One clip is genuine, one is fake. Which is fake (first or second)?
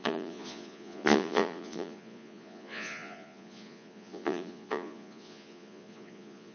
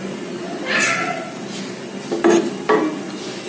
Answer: first